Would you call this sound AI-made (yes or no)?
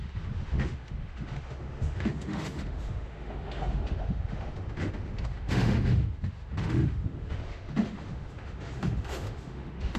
yes